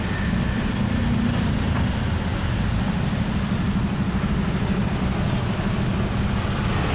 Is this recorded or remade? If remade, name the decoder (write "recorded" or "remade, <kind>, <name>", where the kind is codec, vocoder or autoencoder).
recorded